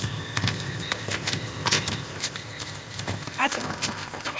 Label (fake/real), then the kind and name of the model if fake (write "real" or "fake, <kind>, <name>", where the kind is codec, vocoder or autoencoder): fake, codec, ZipCodec